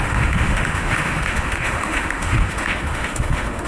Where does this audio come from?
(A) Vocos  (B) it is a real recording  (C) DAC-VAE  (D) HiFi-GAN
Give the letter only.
C